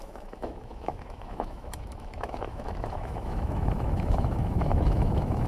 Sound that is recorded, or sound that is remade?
remade